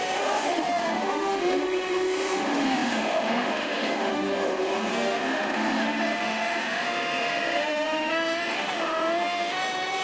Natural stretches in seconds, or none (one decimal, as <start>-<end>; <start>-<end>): none